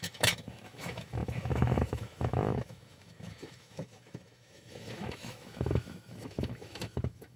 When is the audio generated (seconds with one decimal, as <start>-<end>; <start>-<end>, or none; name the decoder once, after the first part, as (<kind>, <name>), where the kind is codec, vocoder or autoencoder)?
0.0-7.4 (autoencoder, DAC-VAE)